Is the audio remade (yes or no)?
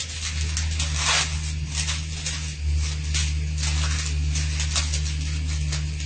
no